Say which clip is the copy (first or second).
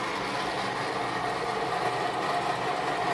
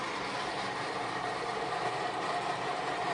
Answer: second